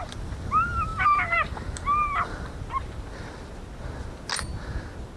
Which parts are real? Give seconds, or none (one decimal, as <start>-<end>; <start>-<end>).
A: 0.0-5.2